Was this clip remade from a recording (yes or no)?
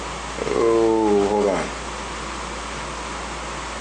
no